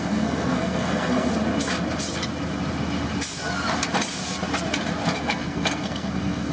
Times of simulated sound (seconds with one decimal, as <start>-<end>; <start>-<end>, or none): 0.0-1.3; 5.2-6.5